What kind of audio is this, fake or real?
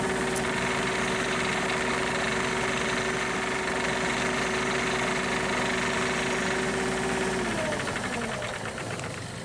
real